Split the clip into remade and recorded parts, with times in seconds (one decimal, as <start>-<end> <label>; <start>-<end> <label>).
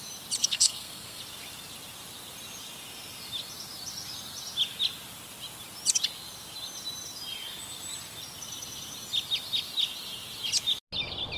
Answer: 0.0-0.4 recorded; 0.4-1.2 remade; 1.2-11.4 recorded